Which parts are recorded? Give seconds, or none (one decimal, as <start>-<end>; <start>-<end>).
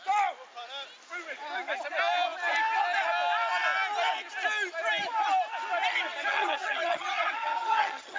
0.0-6.3